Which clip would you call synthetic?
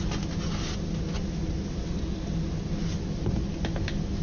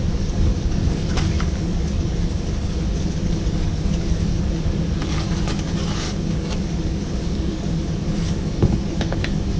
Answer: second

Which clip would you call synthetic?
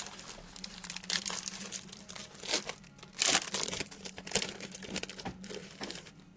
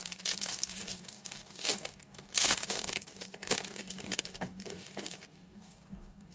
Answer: second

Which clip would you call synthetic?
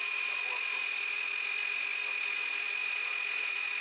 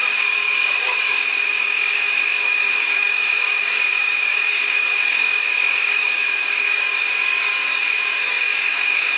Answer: second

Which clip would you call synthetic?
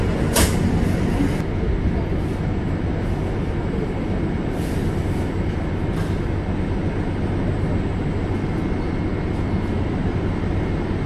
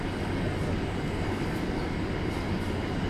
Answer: second